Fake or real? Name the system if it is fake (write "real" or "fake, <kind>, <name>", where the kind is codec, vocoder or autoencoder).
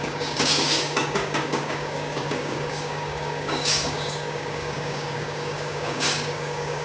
fake, codec, DAC